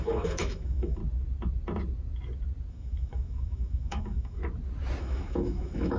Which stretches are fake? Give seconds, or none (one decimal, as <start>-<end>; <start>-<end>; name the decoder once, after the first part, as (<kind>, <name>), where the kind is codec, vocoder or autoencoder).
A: 0.0-1.0 (autoencoder, DAC-VAE); 2.7-4.4; 5.0-6.0